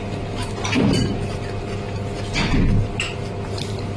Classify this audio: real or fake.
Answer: real